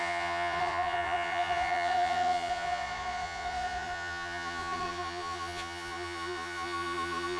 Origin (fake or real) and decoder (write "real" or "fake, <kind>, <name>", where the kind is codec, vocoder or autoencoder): fake, vocoder, Vocos